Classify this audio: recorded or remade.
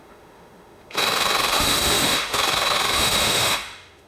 remade